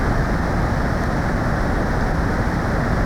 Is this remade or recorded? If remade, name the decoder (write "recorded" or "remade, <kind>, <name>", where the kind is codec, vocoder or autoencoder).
recorded